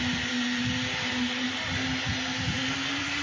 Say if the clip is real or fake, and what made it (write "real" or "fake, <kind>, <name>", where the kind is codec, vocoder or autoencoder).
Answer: real